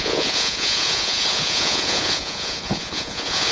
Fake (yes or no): yes